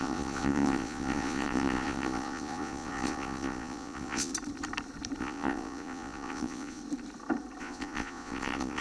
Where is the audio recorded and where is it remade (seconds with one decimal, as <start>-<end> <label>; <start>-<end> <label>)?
0.0-4.3 remade; 4.3-5.2 recorded; 5.2-6.8 remade; 6.8-7.6 recorded; 7.6-8.8 remade